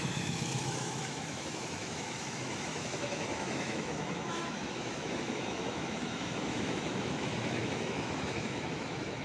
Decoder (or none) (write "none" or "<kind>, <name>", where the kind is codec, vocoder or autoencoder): autoencoder, DAC-VAE